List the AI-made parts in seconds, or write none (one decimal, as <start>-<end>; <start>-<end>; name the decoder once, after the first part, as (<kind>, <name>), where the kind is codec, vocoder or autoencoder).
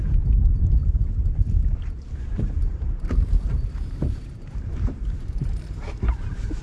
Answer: 0.0-0.8 (vocoder, BigVGAN v2); 1.3-6.6